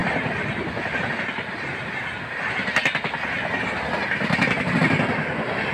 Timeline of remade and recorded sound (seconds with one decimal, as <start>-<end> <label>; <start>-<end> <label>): 0.0-5.7 recorded